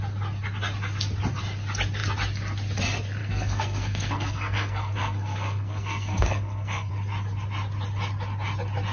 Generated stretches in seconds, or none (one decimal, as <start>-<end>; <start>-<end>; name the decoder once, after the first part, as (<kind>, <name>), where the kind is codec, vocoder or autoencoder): 3.2-6.9 (codec, SNAC)